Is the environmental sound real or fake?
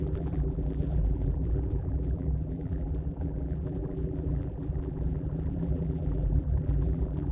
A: fake